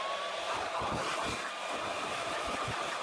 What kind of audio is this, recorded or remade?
recorded